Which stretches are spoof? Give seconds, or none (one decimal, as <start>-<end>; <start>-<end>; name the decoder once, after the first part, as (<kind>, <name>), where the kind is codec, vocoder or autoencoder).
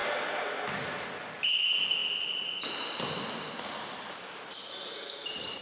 none